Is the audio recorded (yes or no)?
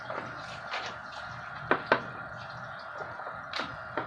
yes